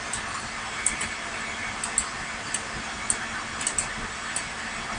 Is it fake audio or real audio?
real